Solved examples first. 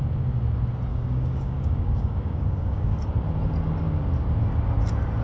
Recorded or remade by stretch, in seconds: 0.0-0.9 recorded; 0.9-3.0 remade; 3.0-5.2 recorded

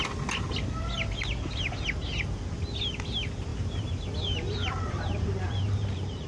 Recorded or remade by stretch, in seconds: 0.0-3.5 recorded; 3.5-6.3 remade

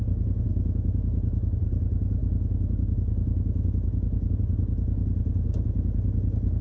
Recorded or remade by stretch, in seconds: 0.0-0.5 recorded; 0.5-1.6 remade; 1.6-2.2 recorded; 2.2-4.3 remade; 4.3-6.6 recorded

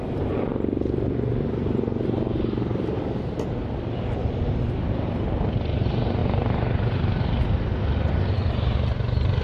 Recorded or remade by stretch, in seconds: 0.0-6.2 recorded; 6.2-7.6 remade; 7.6-9.4 recorded

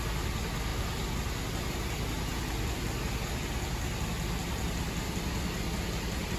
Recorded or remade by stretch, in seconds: 0.0-6.4 recorded

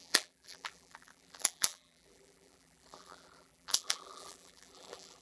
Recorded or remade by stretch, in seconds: 0.0-5.2 remade

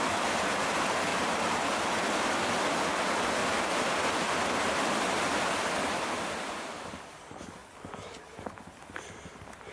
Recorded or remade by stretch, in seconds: 0.0-1.1 recorded; 1.1-1.6 remade; 1.6-3.4 recorded; 3.4-5.5 remade; 5.5-9.7 recorded

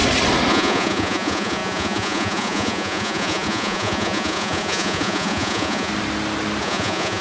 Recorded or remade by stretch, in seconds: 0.0-0.5 recorded; 0.5-5.9 remade; 5.9-6.6 recorded; 6.6-7.2 remade